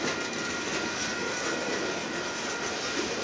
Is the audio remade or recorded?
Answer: recorded